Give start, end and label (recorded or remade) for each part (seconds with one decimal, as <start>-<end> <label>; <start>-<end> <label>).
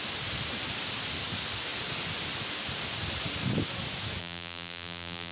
0.0-4.2 recorded; 4.2-5.3 remade